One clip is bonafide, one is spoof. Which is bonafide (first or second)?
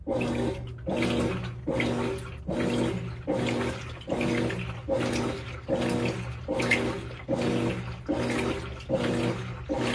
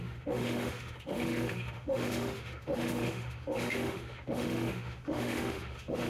first